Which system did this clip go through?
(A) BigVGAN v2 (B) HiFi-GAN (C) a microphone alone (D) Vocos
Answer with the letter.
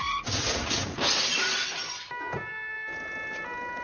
C